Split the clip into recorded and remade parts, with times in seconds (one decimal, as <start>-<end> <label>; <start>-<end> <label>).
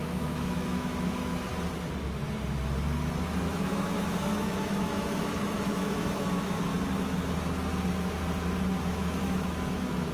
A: 0.0-1.5 remade; 1.5-3.4 recorded; 3.4-6.7 remade; 6.7-8.8 recorded; 8.8-10.1 remade